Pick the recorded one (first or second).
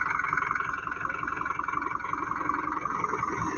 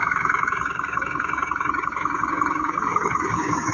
first